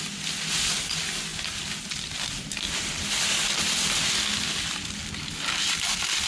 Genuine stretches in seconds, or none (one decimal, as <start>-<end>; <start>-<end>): 0.0-6.3